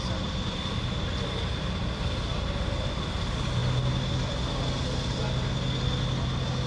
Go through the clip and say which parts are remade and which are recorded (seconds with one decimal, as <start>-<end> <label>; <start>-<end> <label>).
0.0-6.7 recorded